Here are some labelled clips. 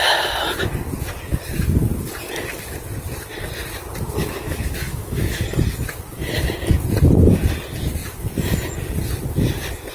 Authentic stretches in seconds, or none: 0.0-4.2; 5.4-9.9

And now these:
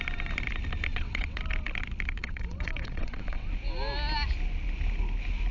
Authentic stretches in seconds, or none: 0.0-0.9; 1.4-2.2; 3.5-5.5

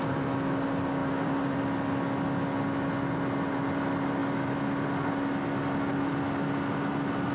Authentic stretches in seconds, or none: 0.0-1.0; 1.6-7.3

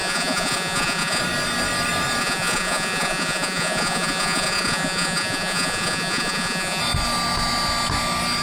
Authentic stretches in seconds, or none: 1.2-2.2; 6.8-8.4

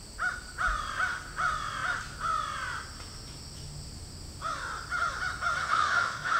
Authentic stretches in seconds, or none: 0.0-5.6